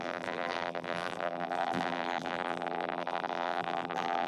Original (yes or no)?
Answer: no